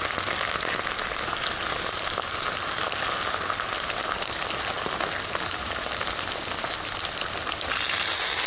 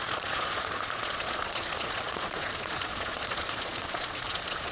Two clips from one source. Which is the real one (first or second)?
first